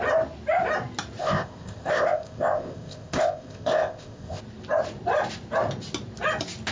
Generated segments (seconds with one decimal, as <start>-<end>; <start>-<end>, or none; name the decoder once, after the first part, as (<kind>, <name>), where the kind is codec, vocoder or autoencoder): 1.2-4.4 (codec, ZipCodec)